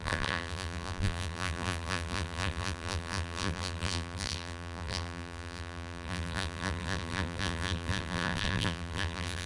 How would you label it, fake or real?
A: fake